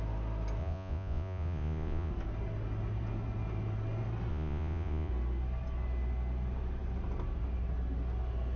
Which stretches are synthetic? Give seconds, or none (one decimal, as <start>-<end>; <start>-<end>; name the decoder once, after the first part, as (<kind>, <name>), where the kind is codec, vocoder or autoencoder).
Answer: 0.6-2.1 (vocoder, Vocos); 4.3-5.1